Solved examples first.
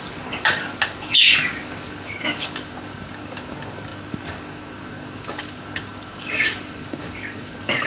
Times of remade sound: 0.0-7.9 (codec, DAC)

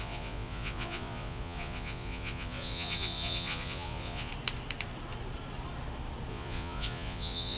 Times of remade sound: 0.0-4.3 (vocoder, Vocos); 6.3-7.6

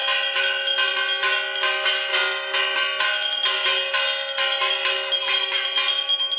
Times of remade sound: none

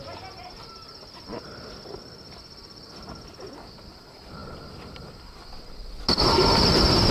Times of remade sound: none

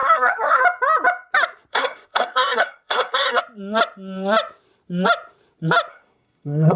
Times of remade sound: 0.0-0.6 (codec, SNAC); 1.7-3.4; 5.9-6.8

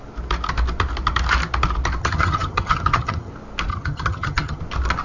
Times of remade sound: 2.0-3.3 (vocoder, HiFi-GAN); 3.7-4.6

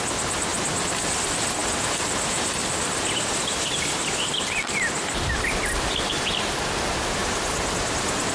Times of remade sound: 1.6-6.2 (vocoder, BigVGAN v2); 7.2-8.3